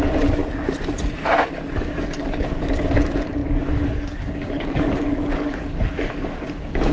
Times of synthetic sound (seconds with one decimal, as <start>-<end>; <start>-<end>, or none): 0.0-0.4; 1.7-6.9